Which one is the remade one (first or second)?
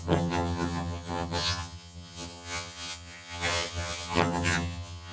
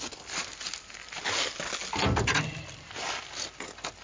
first